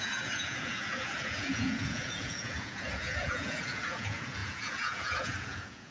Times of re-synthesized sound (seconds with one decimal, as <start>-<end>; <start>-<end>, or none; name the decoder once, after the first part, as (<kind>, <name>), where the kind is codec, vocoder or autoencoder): 0.0-5.9 (vocoder, Vocos)